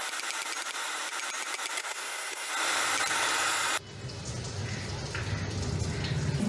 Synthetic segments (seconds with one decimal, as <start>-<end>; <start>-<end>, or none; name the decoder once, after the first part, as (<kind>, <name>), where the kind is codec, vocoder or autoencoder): 1.8-2.5 (codec, SNAC)